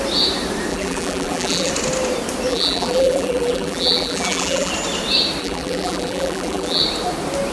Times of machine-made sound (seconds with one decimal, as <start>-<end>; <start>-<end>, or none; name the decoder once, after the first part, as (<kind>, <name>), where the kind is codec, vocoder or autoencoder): 0.7-1.7 (vocoder, BigVGAN v2); 2.5-4.7; 5.4-6.8